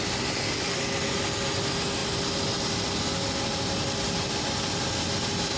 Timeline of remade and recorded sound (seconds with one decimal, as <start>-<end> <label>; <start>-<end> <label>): 0.0-5.6 recorded